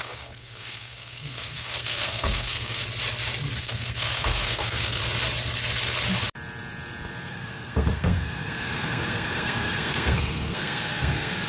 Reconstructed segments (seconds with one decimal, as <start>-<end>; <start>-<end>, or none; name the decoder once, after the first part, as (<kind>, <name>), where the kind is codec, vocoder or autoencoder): 0.0-2.8 (codec, SNAC); 3.6-5.0; 7.3-11.5